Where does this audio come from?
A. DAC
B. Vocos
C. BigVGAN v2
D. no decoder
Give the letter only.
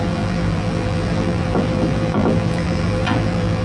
C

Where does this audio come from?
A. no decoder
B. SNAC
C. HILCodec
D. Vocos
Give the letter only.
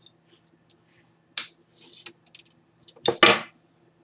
A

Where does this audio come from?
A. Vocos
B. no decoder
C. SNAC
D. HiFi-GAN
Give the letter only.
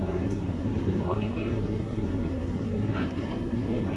C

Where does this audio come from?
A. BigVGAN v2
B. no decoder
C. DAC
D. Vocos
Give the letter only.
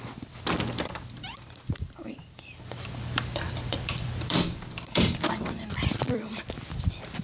A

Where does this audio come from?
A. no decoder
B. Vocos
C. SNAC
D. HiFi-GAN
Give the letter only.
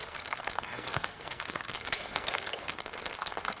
C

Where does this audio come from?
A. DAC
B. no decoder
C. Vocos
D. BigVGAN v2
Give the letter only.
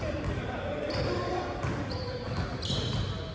B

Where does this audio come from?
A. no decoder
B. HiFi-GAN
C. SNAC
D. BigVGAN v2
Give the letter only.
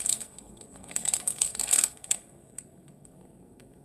C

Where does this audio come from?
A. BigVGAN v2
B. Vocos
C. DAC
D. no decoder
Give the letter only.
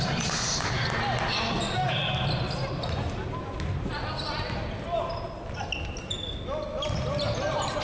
D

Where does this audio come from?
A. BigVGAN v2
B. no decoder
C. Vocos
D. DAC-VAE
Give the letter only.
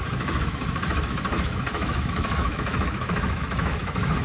D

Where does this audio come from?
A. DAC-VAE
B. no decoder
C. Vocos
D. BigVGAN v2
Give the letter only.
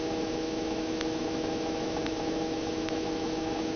A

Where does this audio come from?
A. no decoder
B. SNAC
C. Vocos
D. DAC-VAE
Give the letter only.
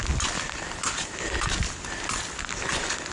A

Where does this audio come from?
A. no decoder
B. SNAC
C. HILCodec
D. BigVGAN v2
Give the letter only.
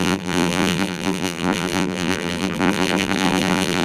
D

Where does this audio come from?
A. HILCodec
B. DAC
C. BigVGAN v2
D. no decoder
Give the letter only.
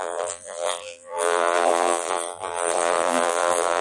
C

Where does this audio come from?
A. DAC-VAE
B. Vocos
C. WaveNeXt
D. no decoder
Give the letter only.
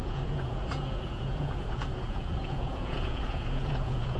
B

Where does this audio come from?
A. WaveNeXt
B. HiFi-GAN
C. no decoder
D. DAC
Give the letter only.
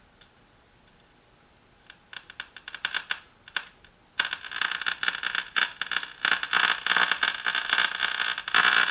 C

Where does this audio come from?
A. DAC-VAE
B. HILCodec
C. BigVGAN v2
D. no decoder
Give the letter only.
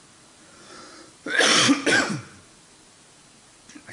D